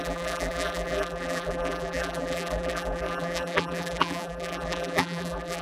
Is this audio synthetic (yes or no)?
yes